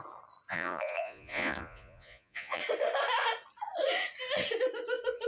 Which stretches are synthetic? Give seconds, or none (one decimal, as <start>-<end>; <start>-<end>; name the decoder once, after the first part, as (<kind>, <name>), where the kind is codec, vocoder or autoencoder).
0.5-2.6 (vocoder, Vocos)